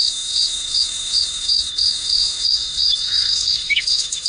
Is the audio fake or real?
fake